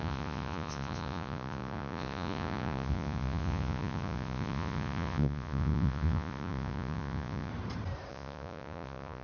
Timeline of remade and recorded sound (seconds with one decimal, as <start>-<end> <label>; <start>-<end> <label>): 0.0-7.5 remade; 7.5-8.1 recorded; 8.1-9.2 remade